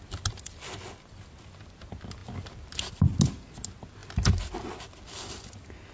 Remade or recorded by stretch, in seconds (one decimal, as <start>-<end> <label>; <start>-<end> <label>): 0.0-5.9 recorded